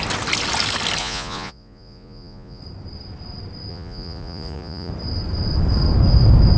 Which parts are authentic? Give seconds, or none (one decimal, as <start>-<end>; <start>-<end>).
0.0-1.0; 2.6-3.7; 4.9-6.6